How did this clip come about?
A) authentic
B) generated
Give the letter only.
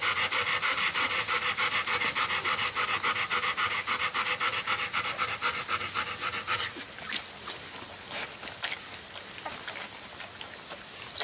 A